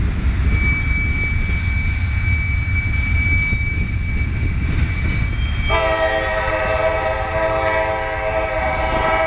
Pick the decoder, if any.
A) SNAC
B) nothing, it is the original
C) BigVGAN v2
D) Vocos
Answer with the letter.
B